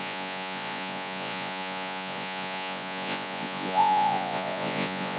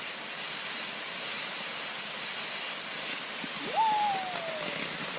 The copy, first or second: first